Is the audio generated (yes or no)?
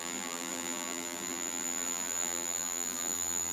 yes